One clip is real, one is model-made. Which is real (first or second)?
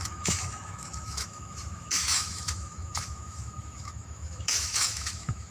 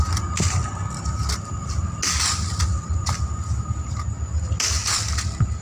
second